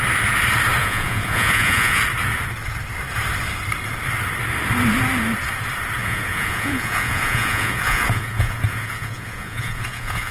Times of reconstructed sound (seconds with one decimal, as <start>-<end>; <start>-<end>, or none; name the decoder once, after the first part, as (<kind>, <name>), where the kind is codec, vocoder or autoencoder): 0.8-2.0 (vocoder, Vocos); 6.0-10.3